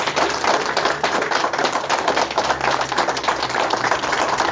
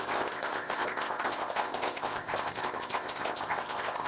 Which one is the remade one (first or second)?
second